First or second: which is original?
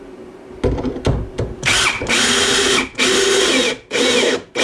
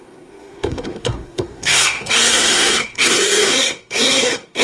first